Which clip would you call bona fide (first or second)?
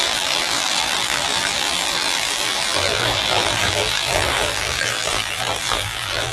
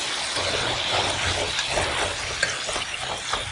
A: second